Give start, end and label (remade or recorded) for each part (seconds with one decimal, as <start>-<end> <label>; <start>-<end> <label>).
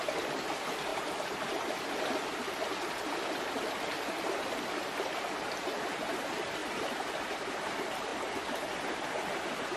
0.0-6.6 remade; 6.6-7.3 recorded; 7.3-8.1 remade; 8.1-9.8 recorded